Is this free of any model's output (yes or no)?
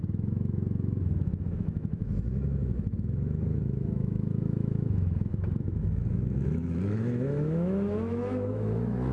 no